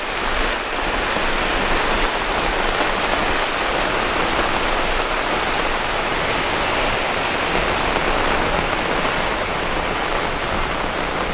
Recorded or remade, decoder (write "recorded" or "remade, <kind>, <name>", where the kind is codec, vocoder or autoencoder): recorded